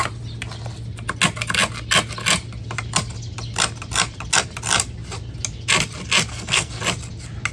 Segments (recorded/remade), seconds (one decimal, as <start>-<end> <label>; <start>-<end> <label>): 0.0-6.3 recorded; 6.3-6.8 remade; 6.8-7.5 recorded